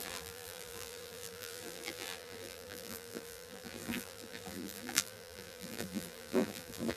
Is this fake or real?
fake